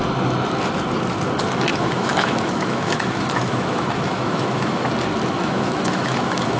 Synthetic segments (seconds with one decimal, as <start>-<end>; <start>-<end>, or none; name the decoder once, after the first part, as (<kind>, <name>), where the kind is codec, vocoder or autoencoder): 1.7-4.9 (autoencoder, DAC-VAE); 5.4-6.6